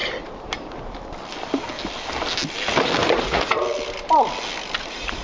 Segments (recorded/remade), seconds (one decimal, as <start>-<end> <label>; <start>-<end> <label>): 0.0-3.1 recorded; 3.1-3.5 remade; 3.5-4.8 recorded; 4.8-5.2 remade